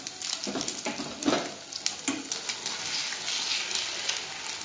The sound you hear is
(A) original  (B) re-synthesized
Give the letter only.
A